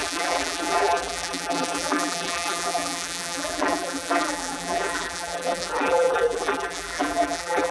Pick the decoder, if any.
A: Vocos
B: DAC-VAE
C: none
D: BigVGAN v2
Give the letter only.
D